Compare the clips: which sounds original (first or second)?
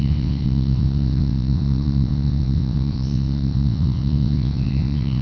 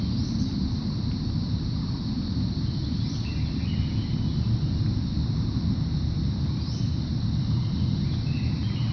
second